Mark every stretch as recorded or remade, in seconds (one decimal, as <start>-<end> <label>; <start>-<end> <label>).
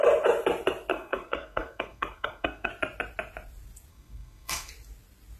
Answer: 0.0-0.9 recorded; 0.9-2.7 remade; 2.7-3.9 recorded; 3.9-4.7 remade; 4.7-5.4 recorded